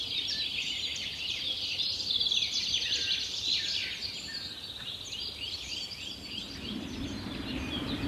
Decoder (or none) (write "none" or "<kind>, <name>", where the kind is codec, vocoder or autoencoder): none